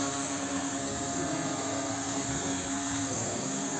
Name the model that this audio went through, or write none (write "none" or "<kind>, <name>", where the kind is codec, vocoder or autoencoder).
codec, SNAC